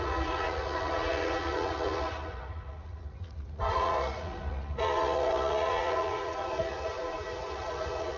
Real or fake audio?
fake